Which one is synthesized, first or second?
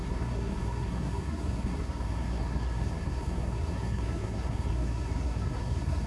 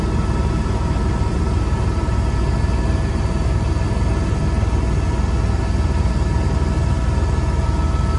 first